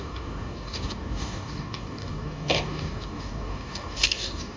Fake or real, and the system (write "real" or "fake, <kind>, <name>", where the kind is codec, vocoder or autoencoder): fake, codec, DAC